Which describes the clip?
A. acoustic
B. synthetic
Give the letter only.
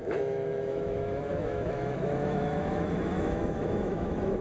B